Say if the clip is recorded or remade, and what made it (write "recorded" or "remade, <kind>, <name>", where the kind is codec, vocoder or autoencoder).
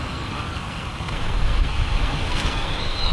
remade, codec, SNAC